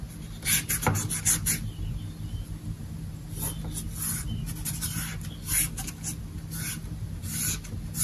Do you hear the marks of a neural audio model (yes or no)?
no